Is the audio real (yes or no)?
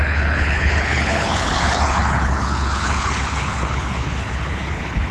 no